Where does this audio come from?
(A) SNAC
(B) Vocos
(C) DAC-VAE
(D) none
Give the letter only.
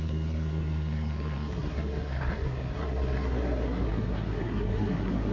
A